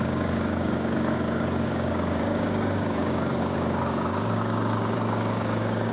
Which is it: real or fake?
fake